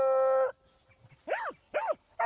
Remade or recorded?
recorded